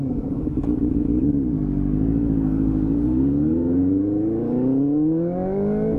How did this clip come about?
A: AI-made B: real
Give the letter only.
A